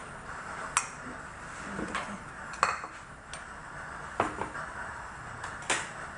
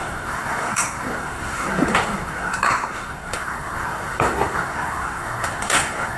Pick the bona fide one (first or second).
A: first